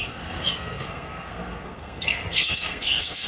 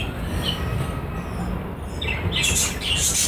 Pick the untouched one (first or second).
second